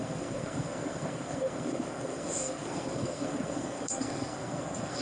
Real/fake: fake